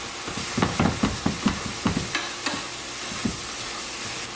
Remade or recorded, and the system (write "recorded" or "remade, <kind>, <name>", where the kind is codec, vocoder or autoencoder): recorded